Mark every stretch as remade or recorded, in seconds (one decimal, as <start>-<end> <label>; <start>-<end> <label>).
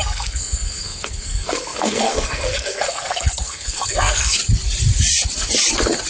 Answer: 0.0-4.4 remade; 4.4-6.1 recorded